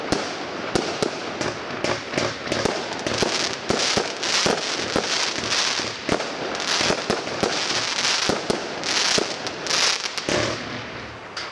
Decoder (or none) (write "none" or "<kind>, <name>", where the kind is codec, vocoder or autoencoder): none